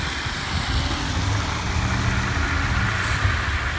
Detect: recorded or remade recorded